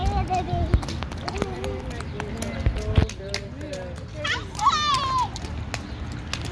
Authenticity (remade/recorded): recorded